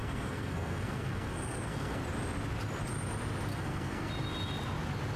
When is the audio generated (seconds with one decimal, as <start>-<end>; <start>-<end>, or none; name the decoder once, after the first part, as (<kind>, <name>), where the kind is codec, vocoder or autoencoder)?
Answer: 0.0-2.0 (codec, SNAC); 3.5-4.1